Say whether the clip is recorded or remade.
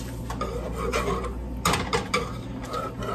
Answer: recorded